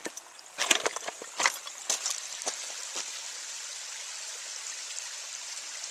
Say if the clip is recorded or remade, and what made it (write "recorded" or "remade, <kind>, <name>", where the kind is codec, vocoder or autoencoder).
recorded